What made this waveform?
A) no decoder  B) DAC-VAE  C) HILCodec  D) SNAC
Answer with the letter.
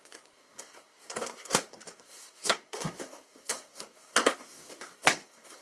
D